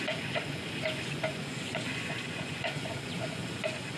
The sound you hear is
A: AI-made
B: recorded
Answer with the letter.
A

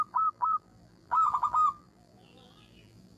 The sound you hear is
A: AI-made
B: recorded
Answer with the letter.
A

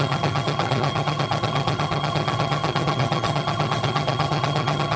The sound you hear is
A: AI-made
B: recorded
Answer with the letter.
A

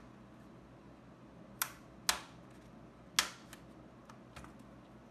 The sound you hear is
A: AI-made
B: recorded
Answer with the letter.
B